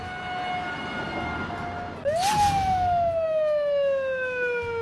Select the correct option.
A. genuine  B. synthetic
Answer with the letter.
A